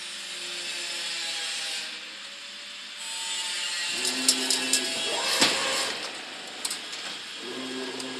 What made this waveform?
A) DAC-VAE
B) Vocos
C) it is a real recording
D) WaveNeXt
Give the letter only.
C